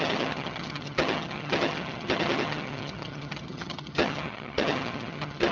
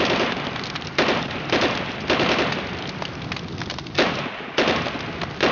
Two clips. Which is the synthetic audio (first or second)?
first